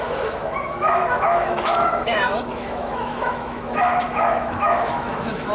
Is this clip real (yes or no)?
no